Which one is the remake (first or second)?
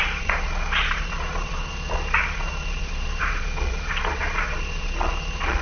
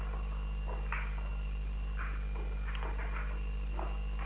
first